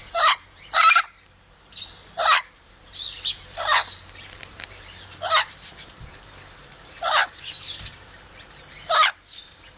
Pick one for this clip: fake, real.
fake